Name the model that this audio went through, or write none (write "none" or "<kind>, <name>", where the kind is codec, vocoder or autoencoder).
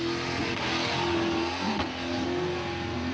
none